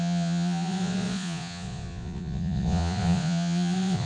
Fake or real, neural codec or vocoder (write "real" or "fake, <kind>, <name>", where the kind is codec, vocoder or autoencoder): fake, vocoder, Vocos